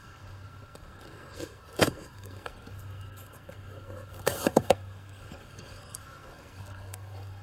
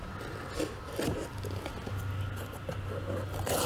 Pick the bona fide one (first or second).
second